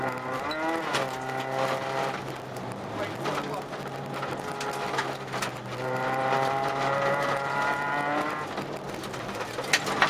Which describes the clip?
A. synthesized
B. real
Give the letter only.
B